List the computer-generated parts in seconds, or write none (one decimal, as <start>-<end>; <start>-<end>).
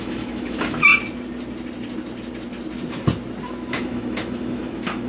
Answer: 0.0-0.9; 3.7-5.1